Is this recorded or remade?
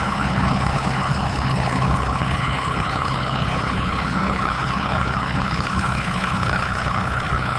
remade